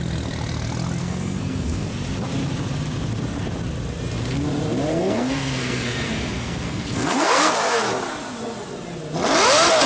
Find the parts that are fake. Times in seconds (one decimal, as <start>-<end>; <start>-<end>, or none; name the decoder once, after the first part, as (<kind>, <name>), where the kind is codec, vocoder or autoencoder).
1.0-1.9 (codec, SNAC); 4.9-7.5